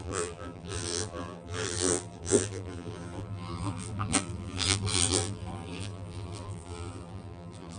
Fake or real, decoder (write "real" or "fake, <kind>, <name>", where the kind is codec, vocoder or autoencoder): fake, vocoder, BigVGAN v2